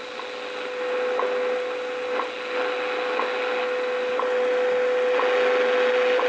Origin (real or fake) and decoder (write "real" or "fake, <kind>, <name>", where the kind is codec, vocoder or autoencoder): real